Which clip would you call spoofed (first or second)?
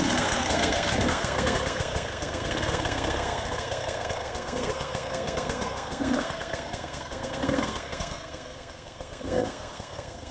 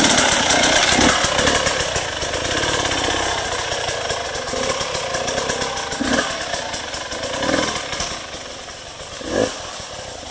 first